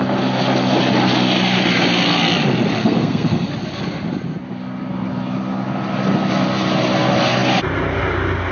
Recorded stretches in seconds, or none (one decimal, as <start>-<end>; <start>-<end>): 0.0-2.8; 3.5-8.5

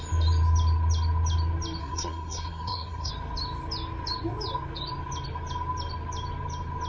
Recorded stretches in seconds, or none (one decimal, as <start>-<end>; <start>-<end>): 0.0-1.8; 3.1-6.9

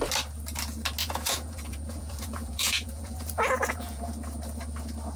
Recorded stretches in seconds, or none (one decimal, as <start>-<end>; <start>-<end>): 0.0-1.0; 4.1-5.2

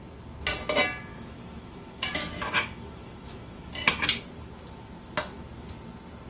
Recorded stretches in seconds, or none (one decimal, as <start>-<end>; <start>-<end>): 0.0-1.1; 3.7-6.3

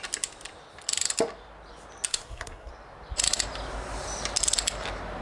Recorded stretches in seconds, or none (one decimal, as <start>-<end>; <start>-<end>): 0.0-2.1; 2.7-5.2

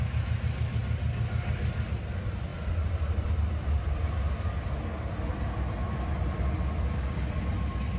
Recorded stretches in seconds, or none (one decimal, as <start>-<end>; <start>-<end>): 0.0-2.5; 4.4-8.0

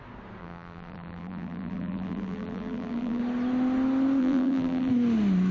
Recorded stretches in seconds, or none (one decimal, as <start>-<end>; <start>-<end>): 0.0-0.4; 3.2-4.2; 4.9-5.5

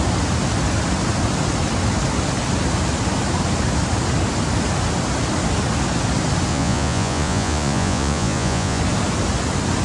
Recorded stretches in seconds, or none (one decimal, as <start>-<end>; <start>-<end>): 0.0-6.5; 8.8-9.8